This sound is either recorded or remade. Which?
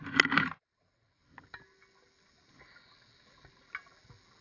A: recorded